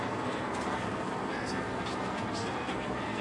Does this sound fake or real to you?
fake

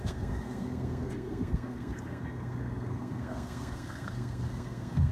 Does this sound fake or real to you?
fake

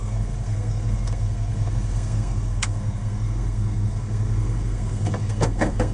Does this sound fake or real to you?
fake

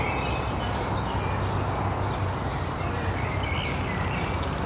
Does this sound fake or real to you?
real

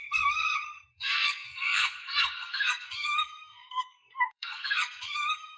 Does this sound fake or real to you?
fake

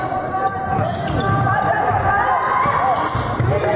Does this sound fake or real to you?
real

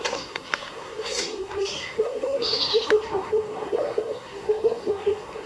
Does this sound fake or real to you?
fake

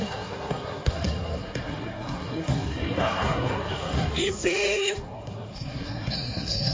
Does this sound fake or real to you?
fake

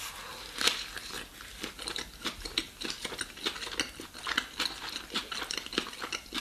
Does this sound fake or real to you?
real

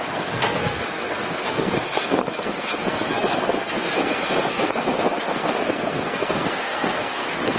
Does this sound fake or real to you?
fake